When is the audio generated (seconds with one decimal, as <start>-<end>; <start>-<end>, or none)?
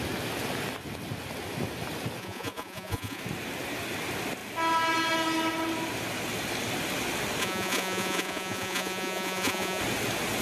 2.2-3.2; 7.4-9.8